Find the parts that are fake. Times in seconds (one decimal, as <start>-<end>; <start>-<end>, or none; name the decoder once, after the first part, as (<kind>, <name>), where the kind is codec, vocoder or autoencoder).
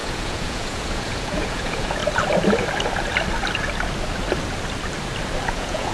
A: 0.0-2.0 (vocoder, Vocos); 5.5-5.9